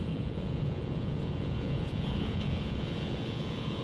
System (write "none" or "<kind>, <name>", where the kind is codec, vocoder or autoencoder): vocoder, Vocos